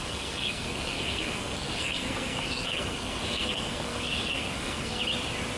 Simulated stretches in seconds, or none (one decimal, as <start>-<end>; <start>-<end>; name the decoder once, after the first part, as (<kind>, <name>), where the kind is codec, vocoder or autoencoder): 0.0-5.0 (codec, SNAC)